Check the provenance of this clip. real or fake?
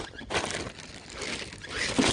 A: real